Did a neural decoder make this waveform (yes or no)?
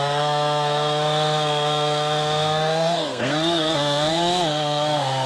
yes